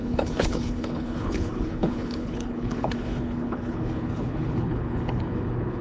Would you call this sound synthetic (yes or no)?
yes